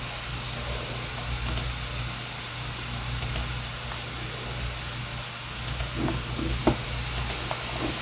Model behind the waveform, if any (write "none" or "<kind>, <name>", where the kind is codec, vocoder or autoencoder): none